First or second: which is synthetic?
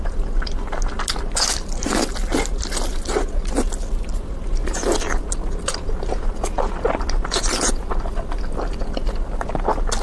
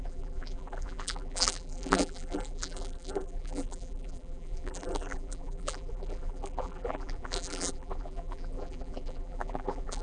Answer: second